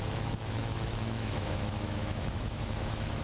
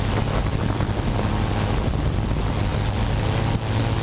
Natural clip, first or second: second